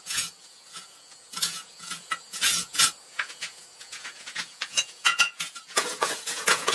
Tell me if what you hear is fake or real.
fake